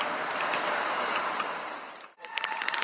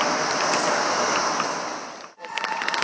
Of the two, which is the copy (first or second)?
first